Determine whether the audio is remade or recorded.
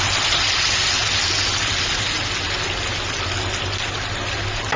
recorded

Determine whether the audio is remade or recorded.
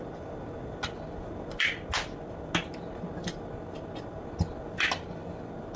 recorded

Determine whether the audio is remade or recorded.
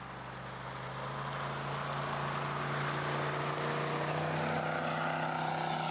recorded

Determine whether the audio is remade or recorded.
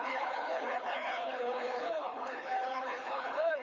remade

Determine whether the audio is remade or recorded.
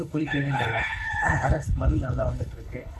remade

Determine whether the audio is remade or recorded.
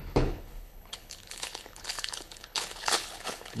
remade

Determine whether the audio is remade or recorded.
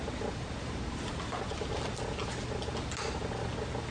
recorded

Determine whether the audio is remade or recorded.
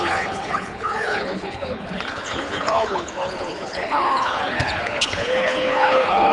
remade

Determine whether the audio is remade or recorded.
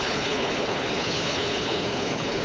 remade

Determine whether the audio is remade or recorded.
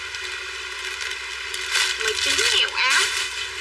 recorded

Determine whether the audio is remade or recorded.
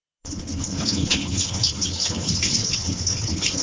remade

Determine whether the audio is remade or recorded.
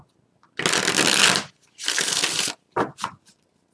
recorded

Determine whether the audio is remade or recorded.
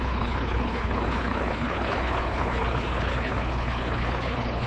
remade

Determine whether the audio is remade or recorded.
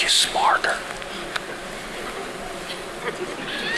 recorded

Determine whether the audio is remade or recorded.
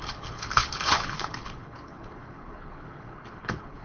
remade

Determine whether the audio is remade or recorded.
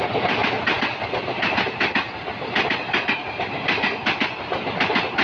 recorded